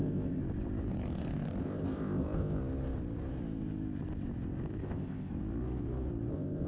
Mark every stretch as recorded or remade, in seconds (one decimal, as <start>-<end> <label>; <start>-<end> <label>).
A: 0.0-0.4 remade; 0.4-1.6 recorded; 1.6-2.6 remade; 2.6-4.8 recorded; 4.8-5.3 remade; 5.3-6.3 recorded; 6.3-6.7 remade